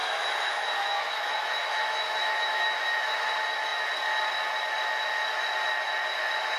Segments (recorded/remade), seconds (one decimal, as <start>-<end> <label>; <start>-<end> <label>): 0.0-3.3 remade; 3.3-6.6 recorded